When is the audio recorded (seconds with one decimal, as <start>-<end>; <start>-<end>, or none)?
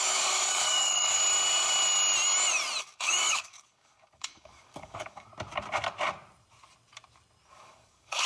1.2-2.8; 5.3-7.5